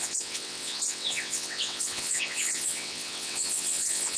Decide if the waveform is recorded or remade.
remade